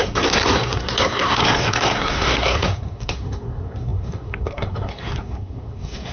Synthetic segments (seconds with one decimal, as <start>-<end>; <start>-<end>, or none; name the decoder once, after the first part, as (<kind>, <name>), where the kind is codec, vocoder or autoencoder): 0.0-6.1 (codec, SNAC)